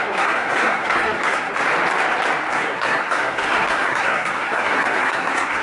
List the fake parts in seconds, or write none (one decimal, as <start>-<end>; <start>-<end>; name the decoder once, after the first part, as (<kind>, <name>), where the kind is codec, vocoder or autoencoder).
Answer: 0.0-1.5 (codec, SNAC); 2.5-5.6